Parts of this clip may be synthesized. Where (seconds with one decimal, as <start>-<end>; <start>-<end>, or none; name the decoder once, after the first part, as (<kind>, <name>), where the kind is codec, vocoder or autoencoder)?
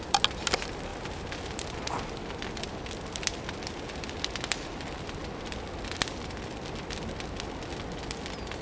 none